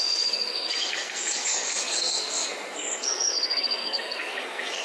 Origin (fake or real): fake